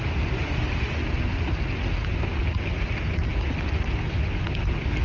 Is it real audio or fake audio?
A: real